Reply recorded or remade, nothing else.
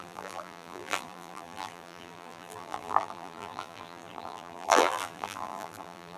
remade